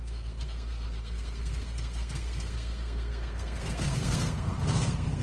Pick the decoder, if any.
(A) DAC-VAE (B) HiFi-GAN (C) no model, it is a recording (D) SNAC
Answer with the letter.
D